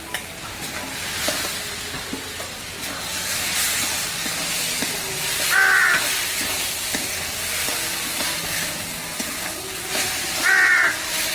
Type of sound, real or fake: real